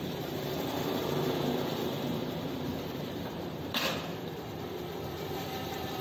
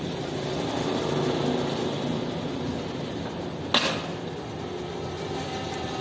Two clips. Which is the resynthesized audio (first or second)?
first